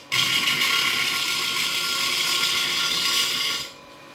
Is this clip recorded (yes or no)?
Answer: yes